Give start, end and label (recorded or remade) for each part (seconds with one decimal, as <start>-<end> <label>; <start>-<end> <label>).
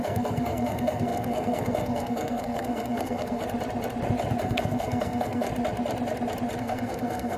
0.0-3.4 remade; 3.4-4.4 recorded; 4.4-5.5 remade; 5.5-6.6 recorded; 6.6-7.4 remade